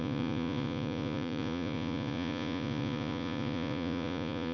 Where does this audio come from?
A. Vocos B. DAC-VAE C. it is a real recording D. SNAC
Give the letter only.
A